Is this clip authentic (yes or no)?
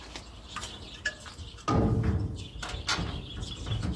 yes